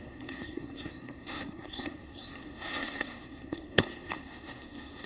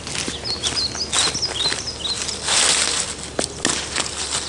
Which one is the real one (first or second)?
second